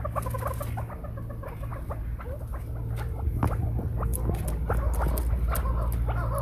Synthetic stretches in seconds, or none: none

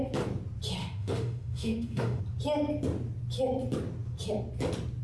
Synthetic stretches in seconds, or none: 0.8-2.2 (autoencoder, DAC-VAE)

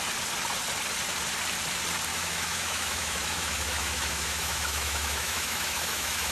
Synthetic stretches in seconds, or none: 2.1-6.3 (autoencoder, DAC-VAE)

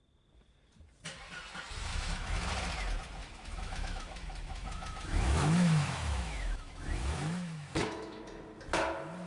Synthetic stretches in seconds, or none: 1.9-2.5 (autoencoder, DAC-VAE); 3.2-8.2